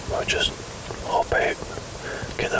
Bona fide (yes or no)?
yes